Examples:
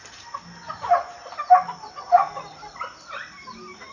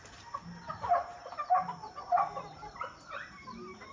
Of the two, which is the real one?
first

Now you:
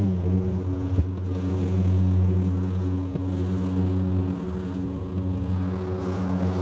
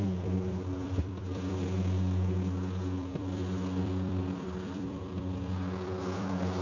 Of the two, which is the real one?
first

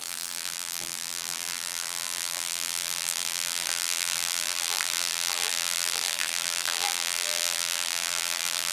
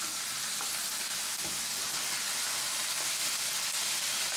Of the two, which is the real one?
second